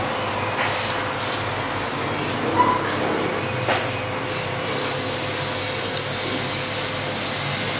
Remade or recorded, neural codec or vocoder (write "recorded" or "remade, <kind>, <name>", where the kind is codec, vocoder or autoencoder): recorded